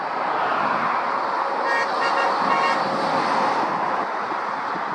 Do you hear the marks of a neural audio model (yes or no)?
no